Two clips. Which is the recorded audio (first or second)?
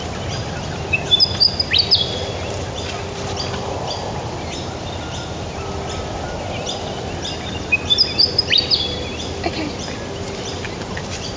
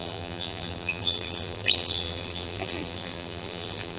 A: first